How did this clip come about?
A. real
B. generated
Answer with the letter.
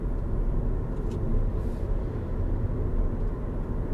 A